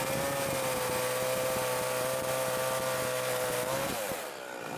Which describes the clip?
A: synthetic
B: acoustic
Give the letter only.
B